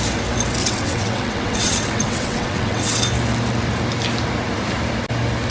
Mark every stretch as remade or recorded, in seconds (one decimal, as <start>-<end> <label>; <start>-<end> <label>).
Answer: 0.0-0.6 recorded; 0.6-3.0 remade; 3.0-5.5 recorded